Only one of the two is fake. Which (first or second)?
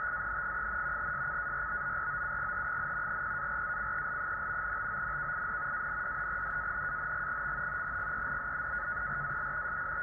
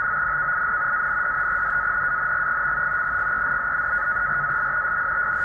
first